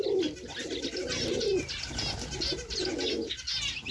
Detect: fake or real real